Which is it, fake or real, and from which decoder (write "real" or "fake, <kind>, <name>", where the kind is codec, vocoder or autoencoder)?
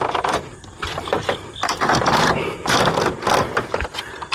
fake, vocoder, BigVGAN v2